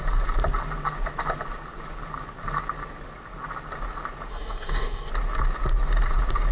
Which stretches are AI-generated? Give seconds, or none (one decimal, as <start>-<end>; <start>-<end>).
4.3-5.1